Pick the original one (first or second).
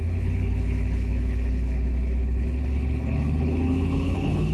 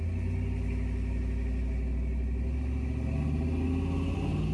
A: second